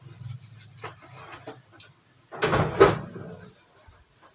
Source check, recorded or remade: recorded